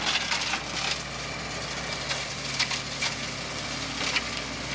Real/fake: real